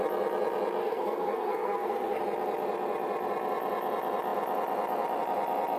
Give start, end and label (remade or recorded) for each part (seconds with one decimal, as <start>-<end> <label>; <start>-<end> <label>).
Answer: 0.0-0.8 recorded; 0.8-2.2 remade; 2.2-5.8 recorded